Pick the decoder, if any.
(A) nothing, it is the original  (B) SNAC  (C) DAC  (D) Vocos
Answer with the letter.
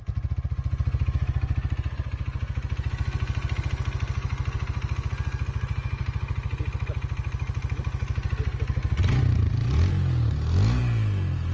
A